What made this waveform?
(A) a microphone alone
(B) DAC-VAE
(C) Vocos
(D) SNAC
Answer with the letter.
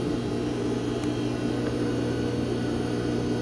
A